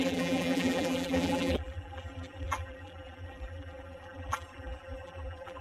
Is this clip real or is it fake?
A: fake